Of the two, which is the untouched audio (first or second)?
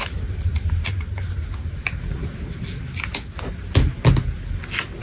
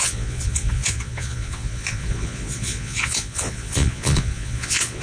first